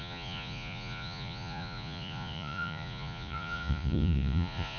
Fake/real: fake